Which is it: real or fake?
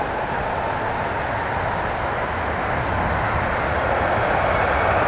real